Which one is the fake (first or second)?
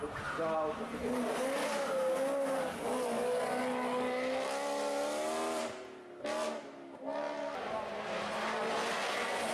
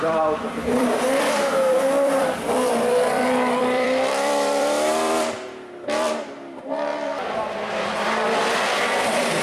second